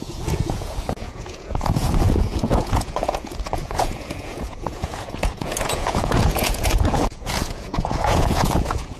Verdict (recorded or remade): remade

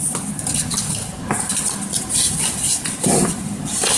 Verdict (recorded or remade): recorded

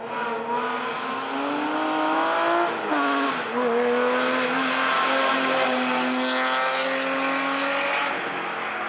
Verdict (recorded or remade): recorded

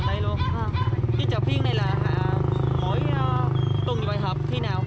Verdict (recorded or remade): recorded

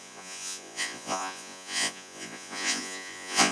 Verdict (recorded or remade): remade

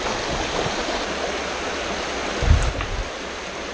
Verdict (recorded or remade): recorded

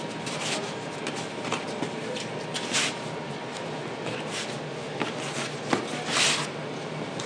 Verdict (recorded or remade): recorded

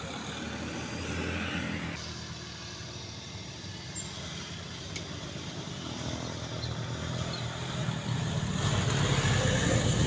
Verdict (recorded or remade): recorded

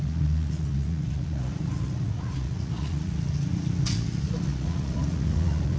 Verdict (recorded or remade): remade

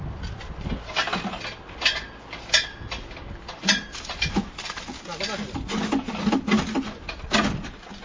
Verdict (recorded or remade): recorded